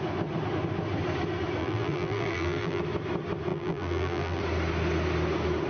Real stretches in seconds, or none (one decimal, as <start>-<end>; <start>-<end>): 0.0-1.6; 2.8-3.5; 4.4-5.7